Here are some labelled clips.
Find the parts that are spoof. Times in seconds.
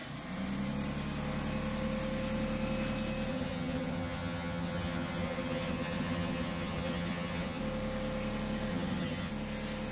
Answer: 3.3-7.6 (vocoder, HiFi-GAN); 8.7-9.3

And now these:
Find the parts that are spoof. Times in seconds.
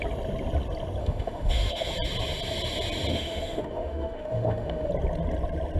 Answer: 1.0-1.9 (autoencoder, DAC-VAE); 3.1-4.9